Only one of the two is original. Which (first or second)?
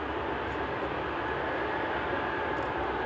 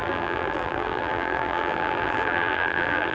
first